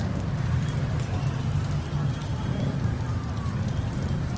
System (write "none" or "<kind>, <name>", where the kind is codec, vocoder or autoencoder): none